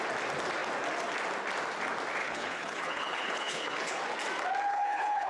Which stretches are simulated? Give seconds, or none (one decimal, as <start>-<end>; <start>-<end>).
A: 2.2-4.0; 4.7-5.3